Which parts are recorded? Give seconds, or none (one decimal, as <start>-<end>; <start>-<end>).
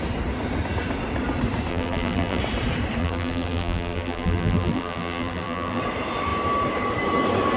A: 0.0-1.7; 2.4-3.0; 5.8-7.6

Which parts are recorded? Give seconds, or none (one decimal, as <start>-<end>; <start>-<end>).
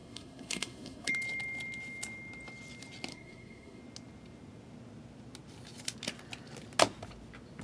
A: 1.1-3.1; 3.8-7.6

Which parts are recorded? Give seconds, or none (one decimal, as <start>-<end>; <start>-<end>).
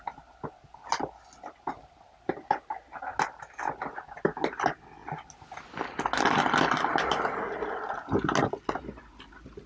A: 0.0-9.7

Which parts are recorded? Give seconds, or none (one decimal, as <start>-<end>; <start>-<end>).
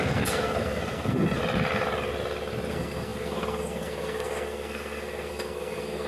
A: 1.4-2.7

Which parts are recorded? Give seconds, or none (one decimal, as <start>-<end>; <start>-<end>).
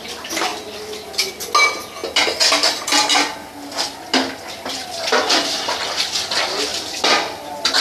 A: 0.0-7.8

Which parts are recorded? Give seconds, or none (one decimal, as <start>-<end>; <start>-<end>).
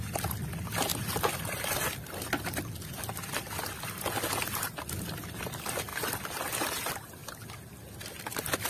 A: 0.0-0.9; 4.0-5.9; 6.5-8.7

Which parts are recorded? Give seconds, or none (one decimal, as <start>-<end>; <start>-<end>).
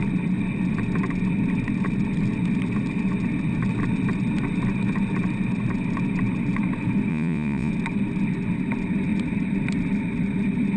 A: 0.0-7.1; 7.7-10.8